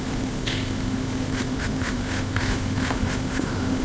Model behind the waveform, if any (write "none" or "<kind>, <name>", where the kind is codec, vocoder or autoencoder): autoencoder, DAC-VAE